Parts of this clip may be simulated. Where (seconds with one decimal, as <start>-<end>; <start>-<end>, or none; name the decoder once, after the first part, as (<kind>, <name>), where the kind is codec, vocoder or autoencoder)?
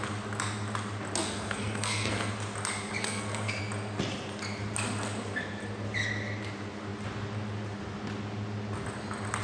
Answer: 1.2-2.3 (codec, SNAC); 3.0-3.6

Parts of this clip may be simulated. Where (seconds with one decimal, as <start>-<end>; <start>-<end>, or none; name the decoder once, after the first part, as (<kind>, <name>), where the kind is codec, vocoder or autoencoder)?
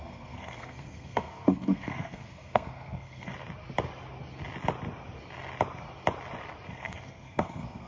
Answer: 0.0-3.3 (codec, SNAC); 6.7-7.9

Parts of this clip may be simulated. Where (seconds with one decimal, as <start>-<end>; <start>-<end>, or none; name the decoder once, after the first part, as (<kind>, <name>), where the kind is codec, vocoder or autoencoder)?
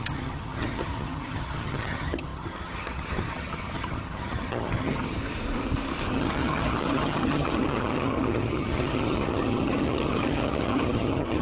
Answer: 0.0-5.2 (vocoder, HiFi-GAN); 6.1-11.4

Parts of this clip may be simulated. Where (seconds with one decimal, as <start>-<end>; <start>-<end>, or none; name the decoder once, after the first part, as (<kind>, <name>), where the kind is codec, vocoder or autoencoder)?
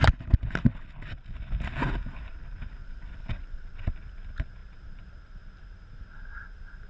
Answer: 2.8-3.9 (vocoder, WaveNeXt)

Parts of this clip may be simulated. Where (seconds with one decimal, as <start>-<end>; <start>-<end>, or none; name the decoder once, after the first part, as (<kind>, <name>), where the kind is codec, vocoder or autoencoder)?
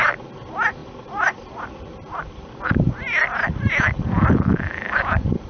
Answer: 0.8-4.1 (vocoder, BigVGAN v2); 4.5-5.5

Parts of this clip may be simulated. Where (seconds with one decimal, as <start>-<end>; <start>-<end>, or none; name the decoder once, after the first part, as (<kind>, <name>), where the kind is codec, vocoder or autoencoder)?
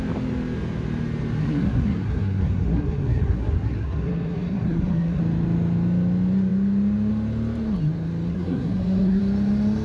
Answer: 1.4-5.2 (codec, SNAC); 8.3-9.2